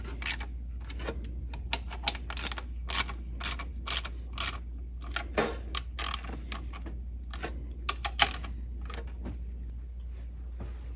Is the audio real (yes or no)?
yes